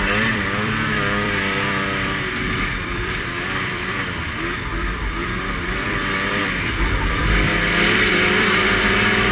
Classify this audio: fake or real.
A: fake